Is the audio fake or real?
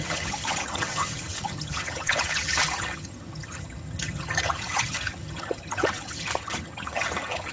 fake